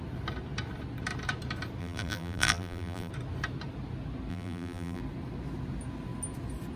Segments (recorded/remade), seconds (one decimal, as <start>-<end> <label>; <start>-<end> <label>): 0.0-1.8 recorded; 1.8-3.1 remade; 3.1-4.3 recorded; 4.3-5.0 remade; 5.0-6.8 recorded

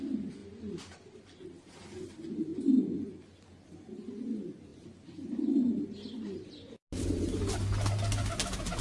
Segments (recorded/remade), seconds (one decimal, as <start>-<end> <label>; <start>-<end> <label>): 0.0-8.8 recorded

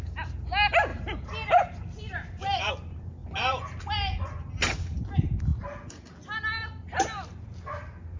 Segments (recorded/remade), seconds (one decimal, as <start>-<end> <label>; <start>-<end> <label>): 0.0-0.9 recorded; 0.9-2.7 remade; 2.7-8.2 recorded

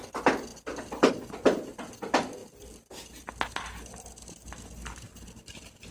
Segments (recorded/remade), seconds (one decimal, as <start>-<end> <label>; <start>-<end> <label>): 0.0-5.9 recorded

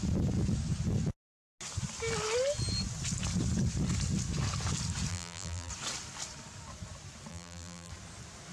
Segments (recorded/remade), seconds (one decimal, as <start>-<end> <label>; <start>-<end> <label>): 0.0-5.1 recorded; 5.1-5.7 remade; 5.7-7.3 recorded; 7.3-7.9 remade; 7.9-8.5 recorded

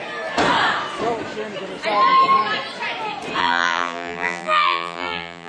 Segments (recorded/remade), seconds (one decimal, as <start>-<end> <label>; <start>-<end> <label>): 0.0-3.4 recorded; 3.4-5.5 remade